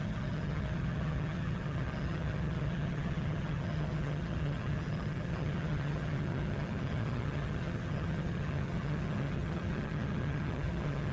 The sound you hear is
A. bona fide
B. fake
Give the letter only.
B